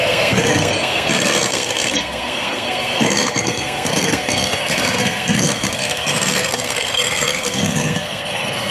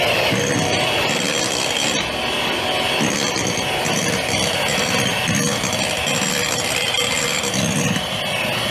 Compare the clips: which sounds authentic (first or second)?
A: second